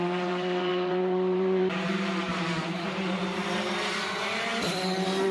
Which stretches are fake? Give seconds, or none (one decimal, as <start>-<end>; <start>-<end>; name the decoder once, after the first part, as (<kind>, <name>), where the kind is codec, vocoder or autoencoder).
0.0-4.5 (vocoder, BigVGAN v2)